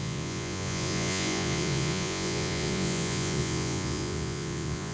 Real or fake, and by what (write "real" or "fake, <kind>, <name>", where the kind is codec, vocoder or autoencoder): fake, vocoder, Vocos